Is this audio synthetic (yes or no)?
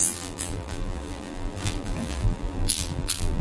yes